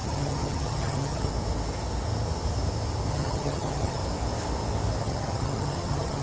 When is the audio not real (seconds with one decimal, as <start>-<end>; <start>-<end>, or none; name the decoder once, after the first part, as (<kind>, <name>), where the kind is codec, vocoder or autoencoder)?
0.0-1.3 (vocoder, HiFi-GAN); 3.1-4.0; 5.0-6.2